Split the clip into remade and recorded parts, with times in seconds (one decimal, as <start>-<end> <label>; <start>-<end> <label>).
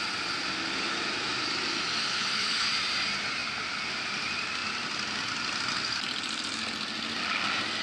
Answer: 0.0-2.0 recorded; 2.0-2.7 remade; 2.7-7.8 recorded